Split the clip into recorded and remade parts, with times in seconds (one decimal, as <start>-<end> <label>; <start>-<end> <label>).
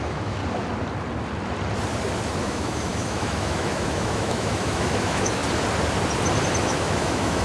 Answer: 0.0-0.4 remade; 0.4-2.4 recorded; 2.4-5.4 remade; 5.4-6.6 recorded; 6.6-7.4 remade